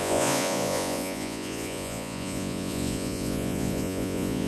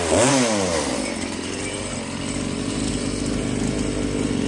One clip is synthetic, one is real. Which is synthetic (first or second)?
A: first